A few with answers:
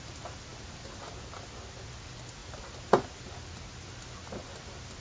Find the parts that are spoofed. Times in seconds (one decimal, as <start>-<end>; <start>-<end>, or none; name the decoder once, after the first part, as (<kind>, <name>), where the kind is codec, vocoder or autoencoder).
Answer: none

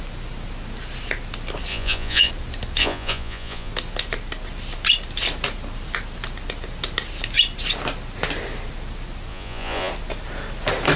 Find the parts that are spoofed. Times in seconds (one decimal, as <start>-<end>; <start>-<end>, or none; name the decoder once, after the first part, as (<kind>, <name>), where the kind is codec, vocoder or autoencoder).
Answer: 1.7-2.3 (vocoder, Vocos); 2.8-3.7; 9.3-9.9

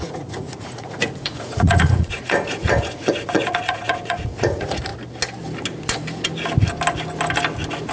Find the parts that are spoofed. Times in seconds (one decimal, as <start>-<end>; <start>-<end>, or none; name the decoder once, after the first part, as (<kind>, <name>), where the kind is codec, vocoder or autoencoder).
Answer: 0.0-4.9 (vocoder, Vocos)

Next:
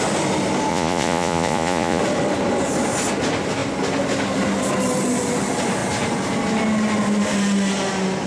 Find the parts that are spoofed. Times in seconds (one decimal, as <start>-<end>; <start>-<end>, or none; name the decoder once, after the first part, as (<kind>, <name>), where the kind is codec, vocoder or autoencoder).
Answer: 0.7-2.0 (vocoder, Vocos)